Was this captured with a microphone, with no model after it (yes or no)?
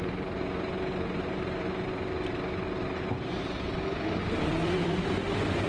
yes